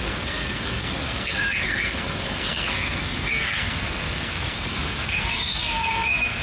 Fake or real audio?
fake